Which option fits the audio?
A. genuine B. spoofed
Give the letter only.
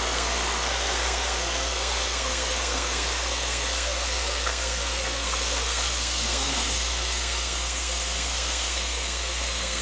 B